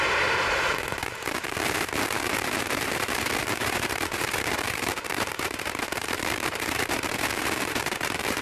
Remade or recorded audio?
remade